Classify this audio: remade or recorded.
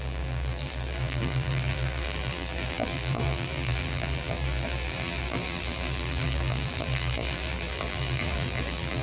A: remade